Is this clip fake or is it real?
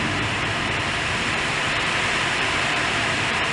fake